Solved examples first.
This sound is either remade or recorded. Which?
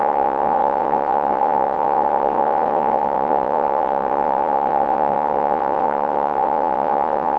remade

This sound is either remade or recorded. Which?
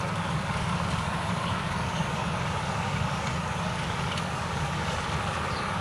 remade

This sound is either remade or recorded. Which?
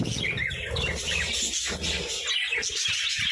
recorded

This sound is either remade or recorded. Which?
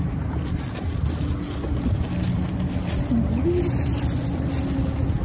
recorded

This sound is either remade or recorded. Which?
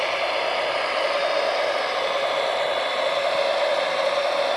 recorded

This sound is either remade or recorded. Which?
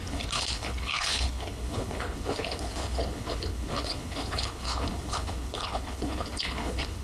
remade